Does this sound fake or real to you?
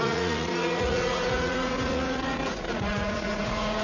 fake